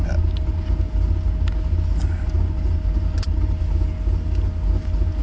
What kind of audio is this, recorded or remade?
recorded